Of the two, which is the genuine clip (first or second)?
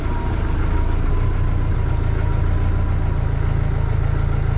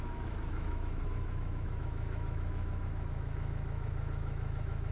first